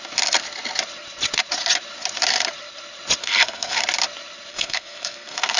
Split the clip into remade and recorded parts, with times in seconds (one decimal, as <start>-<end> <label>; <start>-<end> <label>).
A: 0.0-3.2 recorded; 3.2-3.8 remade; 3.8-4.5 recorded; 4.5-5.6 remade